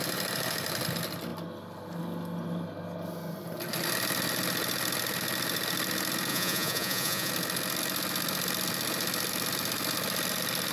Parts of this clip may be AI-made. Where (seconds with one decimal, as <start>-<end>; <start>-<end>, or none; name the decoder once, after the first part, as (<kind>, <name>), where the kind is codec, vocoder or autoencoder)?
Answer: 6.3-7.3 (vocoder, Vocos)